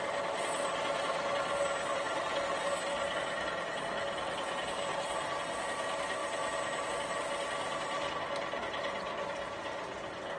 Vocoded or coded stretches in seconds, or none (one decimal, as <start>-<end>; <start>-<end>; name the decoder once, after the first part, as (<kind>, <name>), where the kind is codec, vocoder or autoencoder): 4.9-5.4 (vocoder, BigVGAN v2)